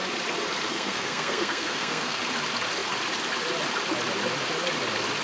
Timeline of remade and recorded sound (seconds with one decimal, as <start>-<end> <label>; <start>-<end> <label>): 0.0-0.7 recorded; 0.7-2.2 remade; 2.2-5.2 recorded